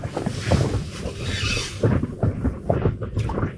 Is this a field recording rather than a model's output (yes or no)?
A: yes